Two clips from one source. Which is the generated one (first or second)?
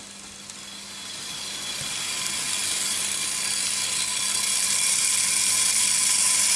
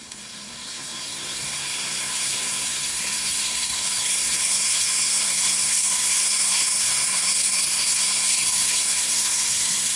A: second